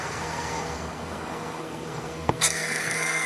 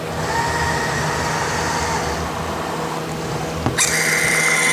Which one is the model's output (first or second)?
first